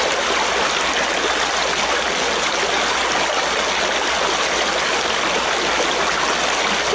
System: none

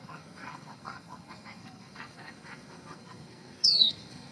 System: codec, SNAC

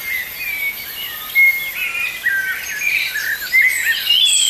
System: none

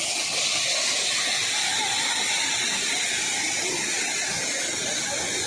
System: none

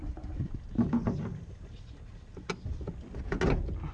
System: none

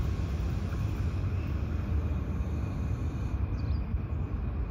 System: none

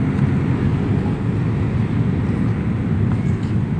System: none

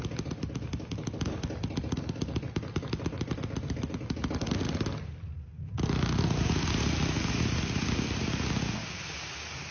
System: none